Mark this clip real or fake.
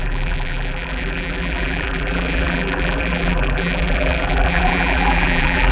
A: fake